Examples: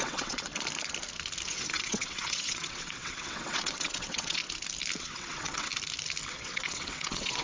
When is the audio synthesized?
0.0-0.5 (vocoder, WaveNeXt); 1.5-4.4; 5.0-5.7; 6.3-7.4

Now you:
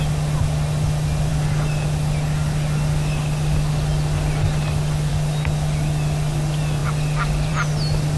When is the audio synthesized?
none